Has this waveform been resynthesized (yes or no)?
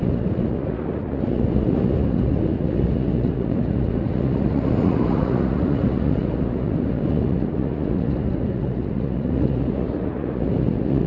yes